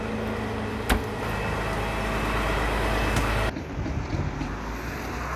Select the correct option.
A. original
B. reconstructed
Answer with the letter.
A